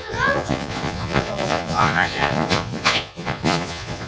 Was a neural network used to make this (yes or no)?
yes